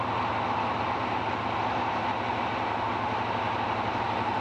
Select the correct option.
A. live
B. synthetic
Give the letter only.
A